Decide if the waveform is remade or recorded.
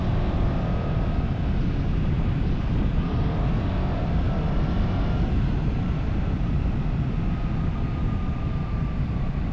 recorded